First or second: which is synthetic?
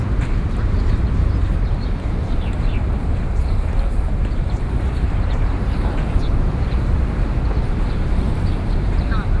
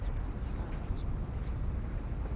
first